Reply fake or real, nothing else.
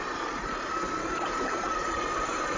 fake